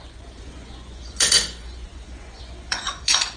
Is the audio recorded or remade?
remade